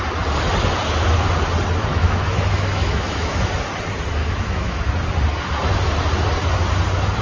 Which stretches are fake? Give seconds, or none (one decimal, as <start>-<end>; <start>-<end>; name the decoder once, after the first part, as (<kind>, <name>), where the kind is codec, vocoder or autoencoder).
1.9-3.5 (autoencoder, DAC-VAE); 4.2-4.8